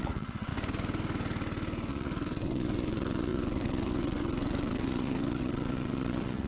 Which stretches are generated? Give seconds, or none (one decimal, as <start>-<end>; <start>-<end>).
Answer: 0.0-0.5; 1.9-6.5